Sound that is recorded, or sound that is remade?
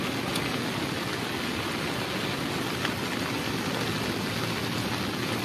recorded